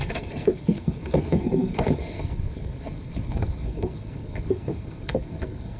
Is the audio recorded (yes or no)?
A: no